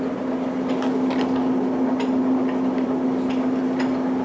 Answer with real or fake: real